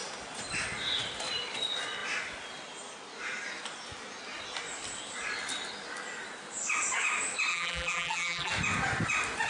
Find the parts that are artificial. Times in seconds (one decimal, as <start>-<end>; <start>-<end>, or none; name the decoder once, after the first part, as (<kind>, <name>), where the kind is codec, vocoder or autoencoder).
7.5-8.5 (vocoder, BigVGAN v2)